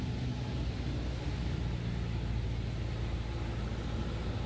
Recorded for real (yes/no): yes